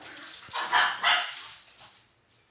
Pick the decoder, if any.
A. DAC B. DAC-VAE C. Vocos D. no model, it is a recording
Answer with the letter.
D